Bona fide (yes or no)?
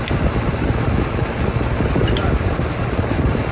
yes